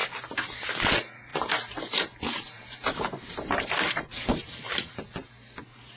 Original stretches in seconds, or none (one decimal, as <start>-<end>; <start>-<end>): 0.0-1.3; 4.9-6.0